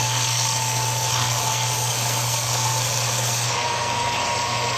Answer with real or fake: fake